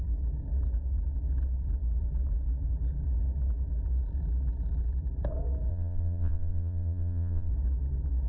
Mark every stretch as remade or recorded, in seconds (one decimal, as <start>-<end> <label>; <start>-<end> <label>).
0.0-5.7 recorded; 5.7-7.5 remade; 7.5-8.3 recorded